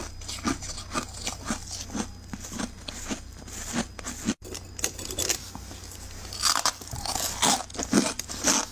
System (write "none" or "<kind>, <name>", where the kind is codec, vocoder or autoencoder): none